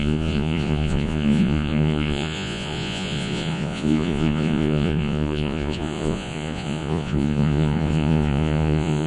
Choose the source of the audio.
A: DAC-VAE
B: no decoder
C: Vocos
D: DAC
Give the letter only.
C